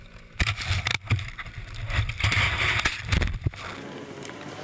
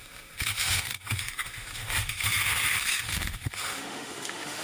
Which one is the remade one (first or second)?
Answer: second